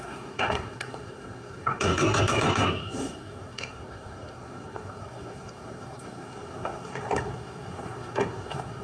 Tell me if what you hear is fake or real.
fake